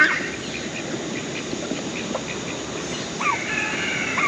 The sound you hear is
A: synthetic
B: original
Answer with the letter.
B